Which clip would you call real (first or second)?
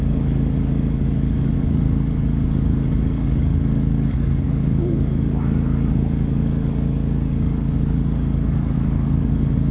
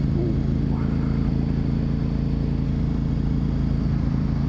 second